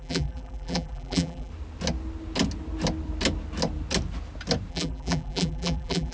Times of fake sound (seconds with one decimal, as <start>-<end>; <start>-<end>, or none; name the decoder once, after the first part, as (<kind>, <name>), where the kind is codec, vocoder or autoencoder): 0.0-1.5 (vocoder, BigVGAN v2); 4.7-6.1